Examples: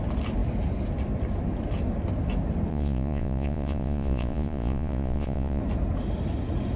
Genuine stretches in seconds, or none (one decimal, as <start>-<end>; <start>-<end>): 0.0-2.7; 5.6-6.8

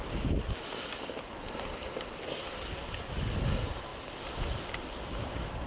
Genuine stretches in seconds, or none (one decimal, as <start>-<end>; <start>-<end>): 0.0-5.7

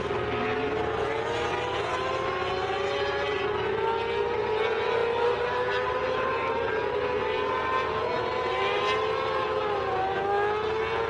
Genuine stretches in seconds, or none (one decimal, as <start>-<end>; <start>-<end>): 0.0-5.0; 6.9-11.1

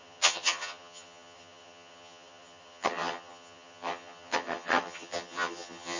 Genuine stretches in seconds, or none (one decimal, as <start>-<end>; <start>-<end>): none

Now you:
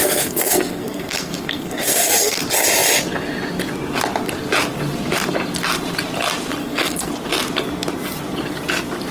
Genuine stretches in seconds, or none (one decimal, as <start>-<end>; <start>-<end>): 2.4-6.6; 7.1-9.1

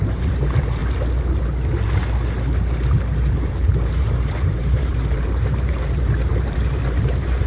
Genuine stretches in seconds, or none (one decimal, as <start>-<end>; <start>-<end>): 0.8-3.3